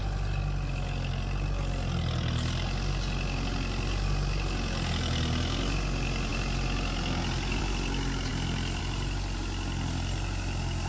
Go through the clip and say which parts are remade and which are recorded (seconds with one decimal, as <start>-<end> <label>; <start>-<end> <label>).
0.0-10.9 recorded